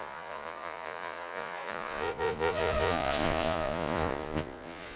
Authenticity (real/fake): fake